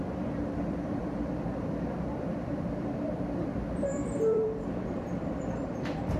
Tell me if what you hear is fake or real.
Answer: fake